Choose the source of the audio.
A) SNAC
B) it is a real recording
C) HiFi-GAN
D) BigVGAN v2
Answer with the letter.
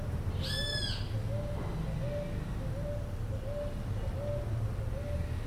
B